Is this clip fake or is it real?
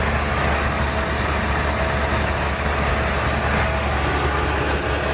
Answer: real